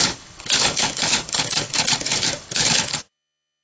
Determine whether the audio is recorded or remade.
remade